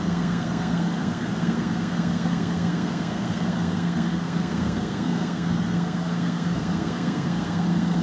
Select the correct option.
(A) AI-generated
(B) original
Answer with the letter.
A